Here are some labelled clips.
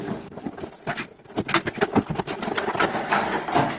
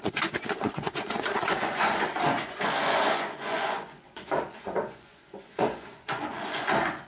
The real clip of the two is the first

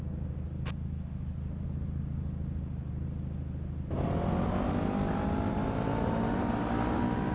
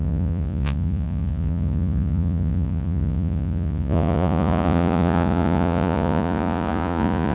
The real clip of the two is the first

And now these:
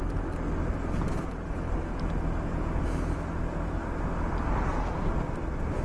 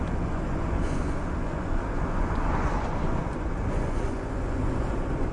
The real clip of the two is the first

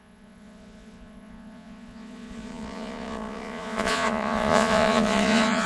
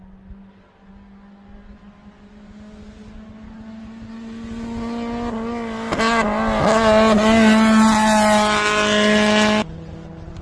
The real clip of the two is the second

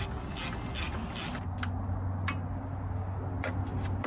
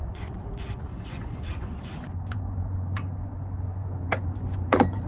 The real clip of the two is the first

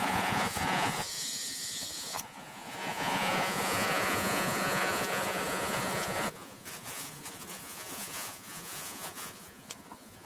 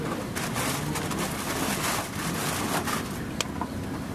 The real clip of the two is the second